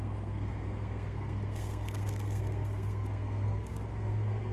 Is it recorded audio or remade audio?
remade